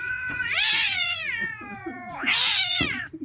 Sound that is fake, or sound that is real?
fake